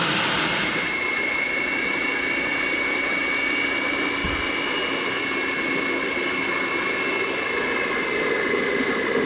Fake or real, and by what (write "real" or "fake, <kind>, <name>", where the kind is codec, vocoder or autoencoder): real